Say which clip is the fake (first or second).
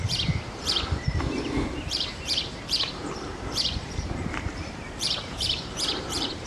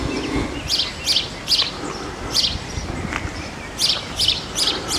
first